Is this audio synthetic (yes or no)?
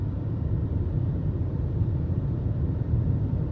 yes